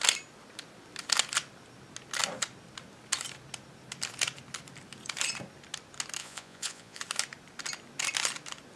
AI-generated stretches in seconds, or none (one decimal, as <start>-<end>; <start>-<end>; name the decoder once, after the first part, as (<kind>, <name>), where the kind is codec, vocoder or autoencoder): 6.2-7.0 (vocoder, Vocos)